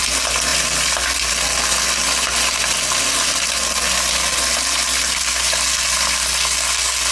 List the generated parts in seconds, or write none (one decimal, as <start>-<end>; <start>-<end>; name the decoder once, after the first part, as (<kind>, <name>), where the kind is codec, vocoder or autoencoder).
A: none